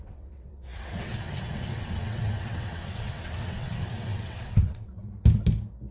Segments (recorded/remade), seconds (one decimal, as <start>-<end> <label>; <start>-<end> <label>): 0.0-5.1 remade; 5.1-5.9 recorded